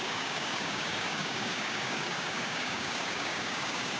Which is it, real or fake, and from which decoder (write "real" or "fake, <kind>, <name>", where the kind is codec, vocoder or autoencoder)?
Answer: fake, codec, DAC